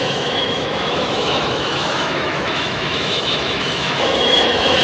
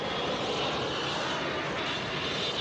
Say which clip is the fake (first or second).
first